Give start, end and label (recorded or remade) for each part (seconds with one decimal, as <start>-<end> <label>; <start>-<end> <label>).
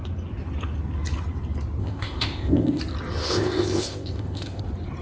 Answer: 0.0-1.8 recorded; 1.8-2.8 remade; 2.8-3.2 recorded; 3.2-4.6 remade; 4.6-5.0 recorded